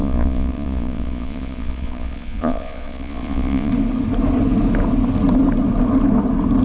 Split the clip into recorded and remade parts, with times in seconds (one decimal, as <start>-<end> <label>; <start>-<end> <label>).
0.0-3.7 remade; 3.7-6.6 recorded

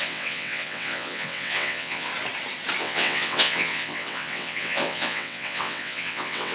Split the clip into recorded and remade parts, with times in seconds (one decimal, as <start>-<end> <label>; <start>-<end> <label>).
0.0-2.1 remade; 2.1-2.8 recorded; 2.8-6.5 remade